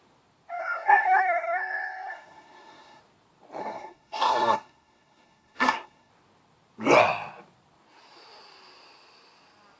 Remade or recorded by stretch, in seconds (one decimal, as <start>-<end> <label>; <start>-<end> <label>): 0.0-0.6 recorded; 0.6-3.0 remade; 3.0-3.6 recorded; 3.6-6.1 remade; 6.1-9.8 recorded

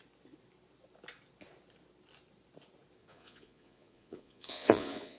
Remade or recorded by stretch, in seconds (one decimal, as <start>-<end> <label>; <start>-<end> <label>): 0.0-3.0 recorded; 3.0-5.2 remade

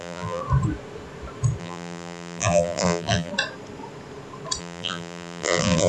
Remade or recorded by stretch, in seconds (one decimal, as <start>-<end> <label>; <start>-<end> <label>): 0.0-0.4 remade; 0.4-1.6 recorded; 1.6-3.3 remade; 3.3-4.6 recorded; 4.6-5.9 remade

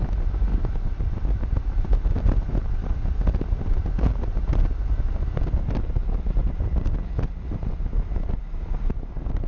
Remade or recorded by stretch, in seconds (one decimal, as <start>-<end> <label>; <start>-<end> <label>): 0.0-0.5 recorded; 0.5-5.4 remade; 5.4-9.5 recorded

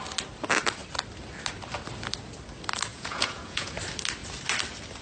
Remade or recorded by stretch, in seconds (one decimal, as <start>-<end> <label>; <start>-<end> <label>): 0.0-2.9 recorded; 2.9-3.7 remade; 3.7-5.0 recorded

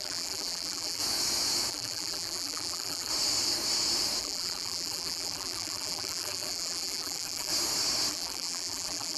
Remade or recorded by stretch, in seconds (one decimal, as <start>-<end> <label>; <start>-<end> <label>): 0.0-1.0 remade; 1.0-1.7 recorded; 1.7-3.1 remade; 3.1-4.2 recorded; 4.2-7.5 remade; 7.5-8.1 recorded; 8.1-9.2 remade